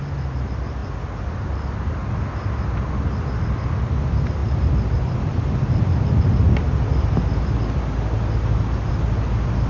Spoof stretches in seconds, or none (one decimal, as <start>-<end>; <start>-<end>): none